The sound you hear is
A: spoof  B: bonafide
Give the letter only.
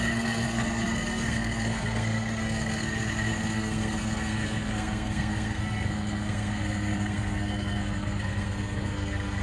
A